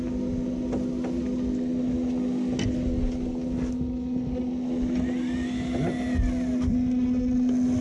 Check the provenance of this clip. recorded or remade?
recorded